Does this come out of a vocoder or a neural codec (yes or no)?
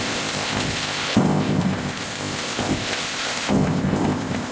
yes